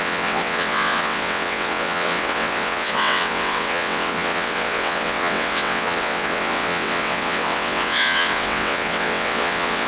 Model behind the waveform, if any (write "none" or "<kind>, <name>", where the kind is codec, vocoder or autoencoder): vocoder, WaveNeXt